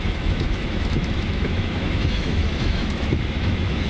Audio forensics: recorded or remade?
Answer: remade